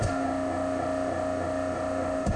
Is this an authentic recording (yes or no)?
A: no